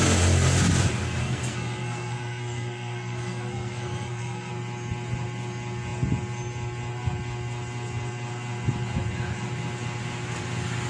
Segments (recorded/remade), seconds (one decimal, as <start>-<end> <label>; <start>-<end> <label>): 0.0-1.2 recorded; 1.2-4.5 remade; 4.5-10.9 recorded